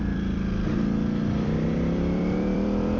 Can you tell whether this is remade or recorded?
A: remade